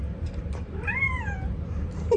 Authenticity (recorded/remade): remade